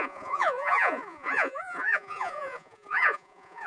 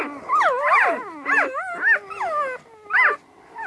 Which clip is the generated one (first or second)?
first